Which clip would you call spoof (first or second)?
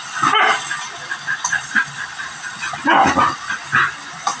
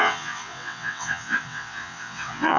second